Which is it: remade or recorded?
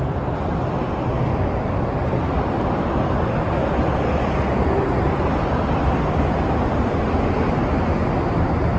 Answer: remade